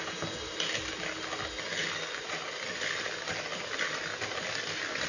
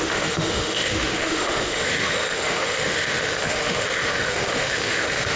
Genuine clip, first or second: first